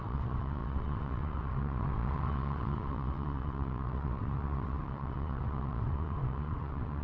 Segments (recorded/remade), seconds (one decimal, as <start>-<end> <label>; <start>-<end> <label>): 0.0-7.0 remade

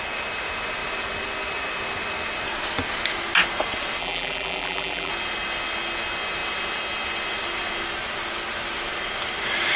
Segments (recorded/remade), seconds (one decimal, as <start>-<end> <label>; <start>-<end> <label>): 0.0-4.0 recorded; 4.0-5.1 remade; 5.1-9.8 recorded

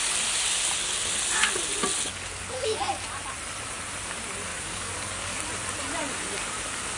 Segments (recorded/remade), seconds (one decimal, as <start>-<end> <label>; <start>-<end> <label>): 0.0-2.1 recorded; 2.1-2.8 remade; 2.8-4.5 recorded; 4.5-5.4 remade; 5.4-7.0 recorded

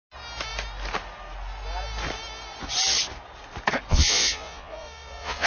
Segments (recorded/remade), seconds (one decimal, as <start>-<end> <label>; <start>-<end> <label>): 0.0-3.9 recorded; 3.9-5.5 remade

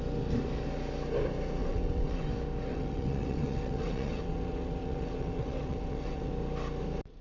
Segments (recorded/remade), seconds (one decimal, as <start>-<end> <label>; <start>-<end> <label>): 0.0-1.6 recorded; 1.6-2.3 remade; 2.3-2.7 recorded; 2.7-6.3 remade; 6.3-7.2 recorded

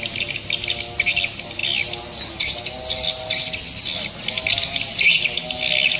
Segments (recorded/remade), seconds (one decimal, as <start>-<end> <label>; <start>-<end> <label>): 0.0-6.0 recorded